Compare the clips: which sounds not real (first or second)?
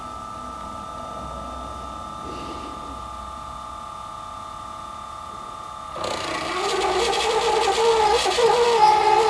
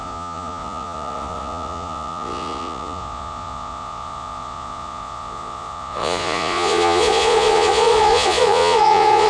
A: second